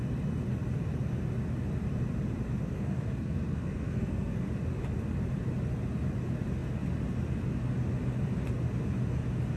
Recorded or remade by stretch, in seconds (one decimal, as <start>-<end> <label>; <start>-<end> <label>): 0.0-2.6 recorded; 2.6-4.5 remade; 4.5-9.6 recorded